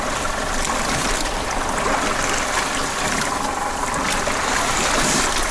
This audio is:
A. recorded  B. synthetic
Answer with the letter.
A